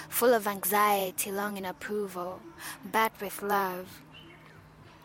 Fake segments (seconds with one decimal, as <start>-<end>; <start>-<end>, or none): 1.0-4.0